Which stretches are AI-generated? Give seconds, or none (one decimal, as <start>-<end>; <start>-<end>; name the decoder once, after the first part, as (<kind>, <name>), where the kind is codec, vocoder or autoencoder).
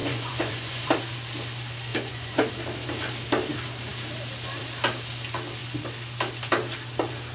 0.0-0.9 (vocoder, Vocos); 1.9-2.5